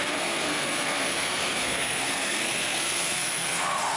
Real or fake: fake